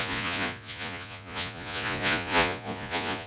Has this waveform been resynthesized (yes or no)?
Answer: yes